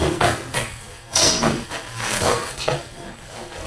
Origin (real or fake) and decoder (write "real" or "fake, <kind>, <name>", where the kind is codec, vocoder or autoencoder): fake, codec, SNAC